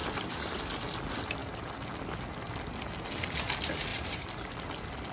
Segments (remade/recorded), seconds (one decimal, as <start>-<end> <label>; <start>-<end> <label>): 0.0-0.6 remade; 0.6-3.9 recorded; 3.9-4.6 remade; 4.6-5.1 recorded